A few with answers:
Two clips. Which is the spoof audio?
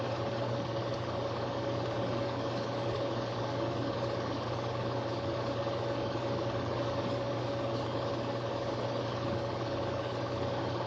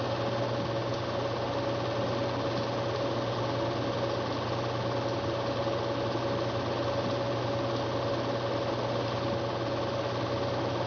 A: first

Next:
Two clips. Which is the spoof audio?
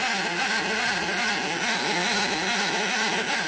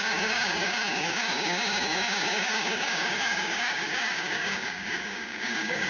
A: second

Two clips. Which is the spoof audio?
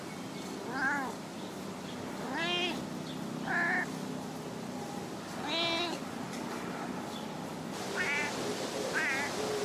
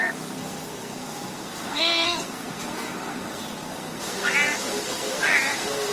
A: second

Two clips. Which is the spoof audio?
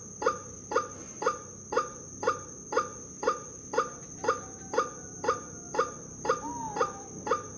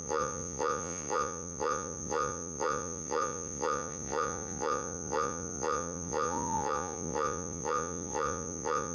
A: second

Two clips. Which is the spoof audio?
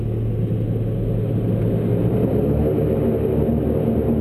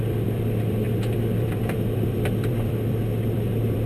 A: second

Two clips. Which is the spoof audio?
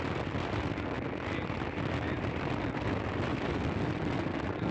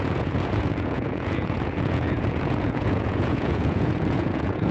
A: second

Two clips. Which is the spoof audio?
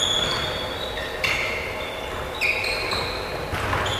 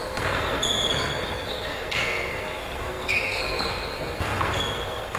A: second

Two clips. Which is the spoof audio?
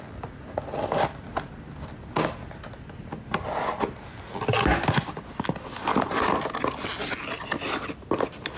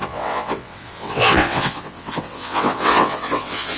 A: second